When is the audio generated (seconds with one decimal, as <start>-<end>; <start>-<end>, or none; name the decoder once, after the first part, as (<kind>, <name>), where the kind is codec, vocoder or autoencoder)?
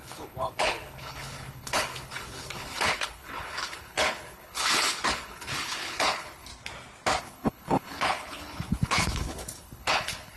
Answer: 0.0-6.5 (codec, HILCodec); 7.2-10.4